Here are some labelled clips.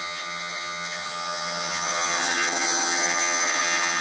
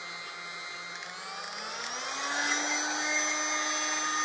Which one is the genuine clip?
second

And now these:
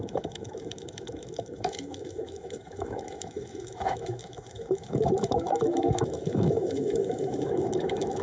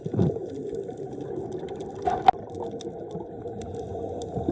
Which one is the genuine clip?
second